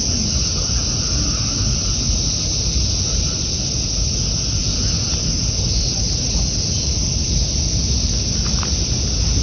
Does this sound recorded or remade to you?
recorded